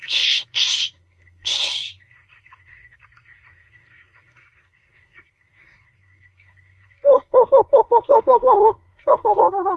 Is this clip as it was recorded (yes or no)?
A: no